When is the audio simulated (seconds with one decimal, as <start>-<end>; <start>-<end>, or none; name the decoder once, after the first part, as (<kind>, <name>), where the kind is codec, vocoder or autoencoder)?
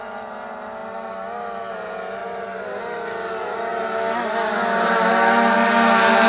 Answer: 2.2-2.8 (vocoder, BigVGAN v2)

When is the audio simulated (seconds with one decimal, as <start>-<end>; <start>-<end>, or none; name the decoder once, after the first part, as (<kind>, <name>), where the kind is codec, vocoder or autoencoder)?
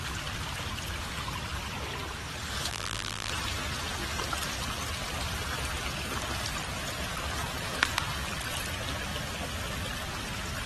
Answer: 2.7-3.3 (vocoder, BigVGAN v2)